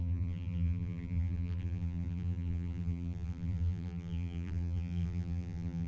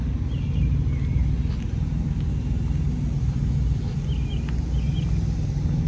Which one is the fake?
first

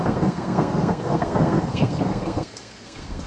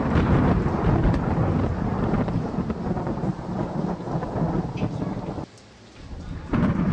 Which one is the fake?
first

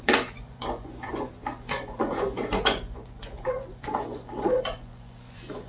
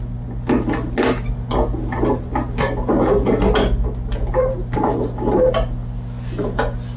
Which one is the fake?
first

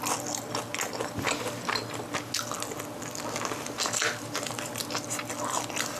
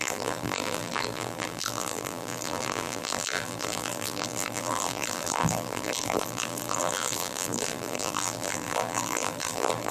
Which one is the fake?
second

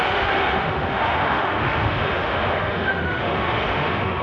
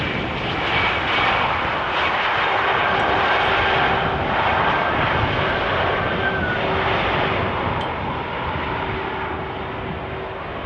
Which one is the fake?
first